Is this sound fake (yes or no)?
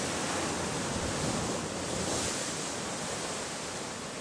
yes